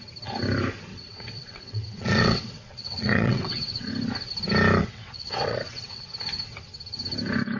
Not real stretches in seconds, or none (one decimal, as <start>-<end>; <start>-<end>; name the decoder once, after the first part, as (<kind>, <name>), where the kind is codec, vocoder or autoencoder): 0.9-3.9 (vocoder, WaveNeXt); 4.8-6.0